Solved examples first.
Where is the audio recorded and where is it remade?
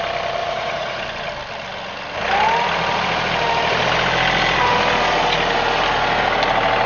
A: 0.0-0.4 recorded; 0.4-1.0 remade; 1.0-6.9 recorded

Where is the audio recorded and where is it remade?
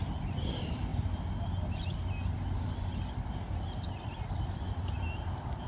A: 0.0-5.7 recorded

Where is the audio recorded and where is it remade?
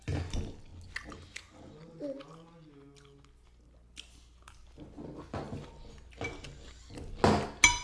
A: 0.0-7.8 recorded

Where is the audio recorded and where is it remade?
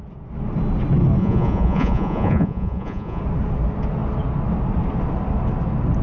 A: 0.0-1.2 recorded; 1.2-3.2 remade; 3.2-6.0 recorded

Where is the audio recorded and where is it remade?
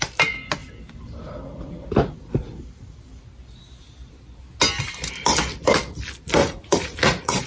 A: 0.0-6.4 recorded; 6.4-7.5 remade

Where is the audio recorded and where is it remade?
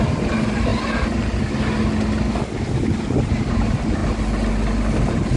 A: 0.0-5.4 recorded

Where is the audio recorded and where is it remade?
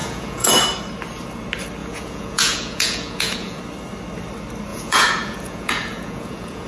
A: 0.0-0.5 remade; 0.5-1.8 recorded; 1.8-3.6 remade; 3.6-4.7 recorded; 4.7-6.7 remade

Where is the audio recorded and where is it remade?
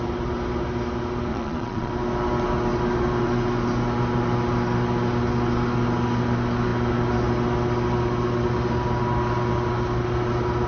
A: 0.0-1.3 recorded; 1.3-1.9 remade; 1.9-10.7 recorded